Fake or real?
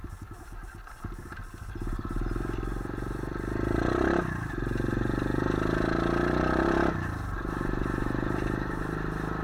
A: real